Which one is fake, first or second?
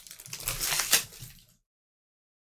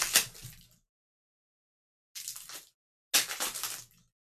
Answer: first